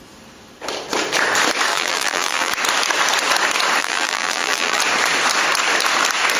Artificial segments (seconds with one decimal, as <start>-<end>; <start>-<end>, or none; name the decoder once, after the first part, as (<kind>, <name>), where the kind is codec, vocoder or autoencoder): 1.7-2.5 (vocoder, BigVGAN v2); 3.8-4.8

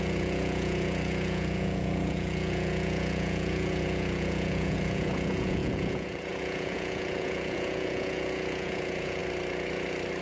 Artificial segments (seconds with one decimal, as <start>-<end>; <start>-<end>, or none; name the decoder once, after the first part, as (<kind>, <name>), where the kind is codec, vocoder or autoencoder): 0.0-9.2 (vocoder, Vocos)

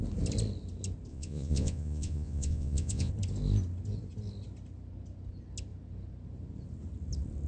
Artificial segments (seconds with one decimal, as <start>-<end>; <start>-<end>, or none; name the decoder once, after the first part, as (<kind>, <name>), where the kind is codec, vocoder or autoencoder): 1.1-3.1 (vocoder, Vocos)

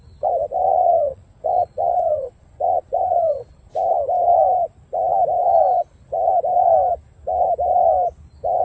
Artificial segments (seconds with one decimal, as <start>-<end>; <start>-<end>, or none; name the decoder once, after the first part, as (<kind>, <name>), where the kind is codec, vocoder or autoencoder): 0.6-3.7 (vocoder, Vocos)